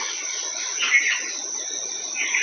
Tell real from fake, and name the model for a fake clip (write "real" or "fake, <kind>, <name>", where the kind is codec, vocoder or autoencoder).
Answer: real